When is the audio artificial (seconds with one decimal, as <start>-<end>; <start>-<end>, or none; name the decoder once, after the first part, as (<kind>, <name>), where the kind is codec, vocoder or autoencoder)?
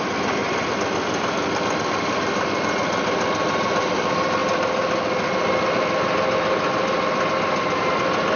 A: none